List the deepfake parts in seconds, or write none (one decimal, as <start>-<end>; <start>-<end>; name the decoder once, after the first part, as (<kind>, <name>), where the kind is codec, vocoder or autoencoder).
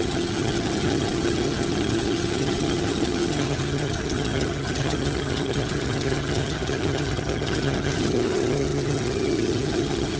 0.0-10.2 (vocoder, HiFi-GAN)